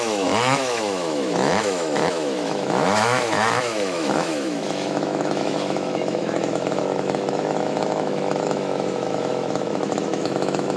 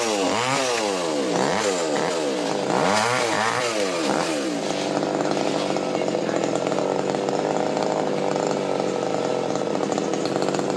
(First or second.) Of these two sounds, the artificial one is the first